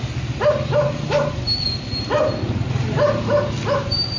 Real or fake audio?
real